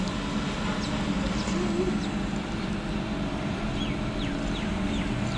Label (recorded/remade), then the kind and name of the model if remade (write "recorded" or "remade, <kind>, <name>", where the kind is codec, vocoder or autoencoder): recorded